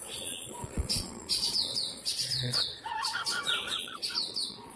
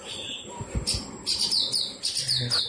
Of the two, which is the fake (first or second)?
first